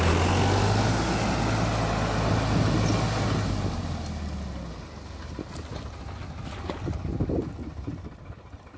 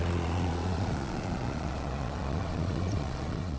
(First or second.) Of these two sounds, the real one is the first